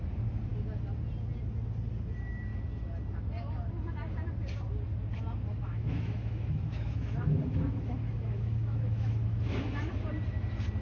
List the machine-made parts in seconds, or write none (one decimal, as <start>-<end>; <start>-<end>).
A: 5.6-9.9